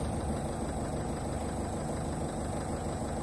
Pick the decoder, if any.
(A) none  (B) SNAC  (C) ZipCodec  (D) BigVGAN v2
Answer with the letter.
A